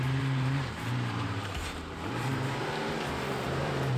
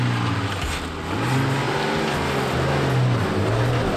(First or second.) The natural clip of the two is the second